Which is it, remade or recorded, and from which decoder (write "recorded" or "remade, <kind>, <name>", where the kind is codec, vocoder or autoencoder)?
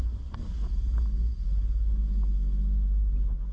recorded